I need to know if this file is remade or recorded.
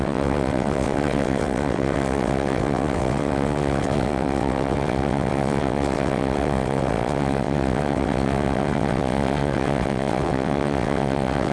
remade